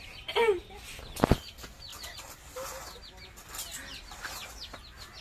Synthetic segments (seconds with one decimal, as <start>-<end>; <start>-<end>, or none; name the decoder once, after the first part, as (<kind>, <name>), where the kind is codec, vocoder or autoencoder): none